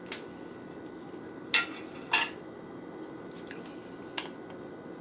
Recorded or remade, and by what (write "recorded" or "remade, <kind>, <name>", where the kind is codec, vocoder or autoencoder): recorded